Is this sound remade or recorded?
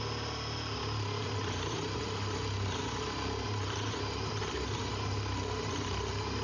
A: recorded